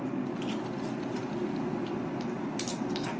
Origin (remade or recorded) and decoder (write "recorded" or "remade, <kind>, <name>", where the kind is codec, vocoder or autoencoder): recorded